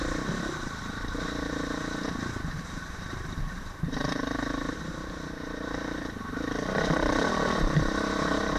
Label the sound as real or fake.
fake